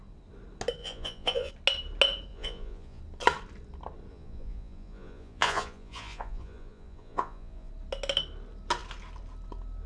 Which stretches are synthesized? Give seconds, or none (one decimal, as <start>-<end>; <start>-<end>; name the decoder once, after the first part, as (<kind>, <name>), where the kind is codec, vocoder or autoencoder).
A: 0.8-1.5 (vocoder, Vocos); 2.3-3.0; 4.1-7.7